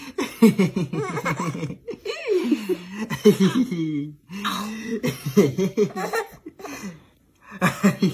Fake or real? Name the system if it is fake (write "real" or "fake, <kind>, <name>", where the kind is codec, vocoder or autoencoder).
real